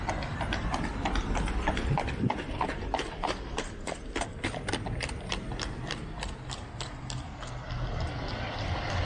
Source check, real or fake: real